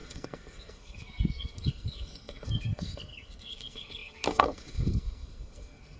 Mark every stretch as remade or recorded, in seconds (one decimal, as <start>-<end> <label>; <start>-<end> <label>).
0.0-6.0 remade